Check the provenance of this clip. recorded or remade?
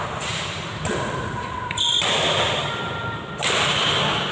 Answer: remade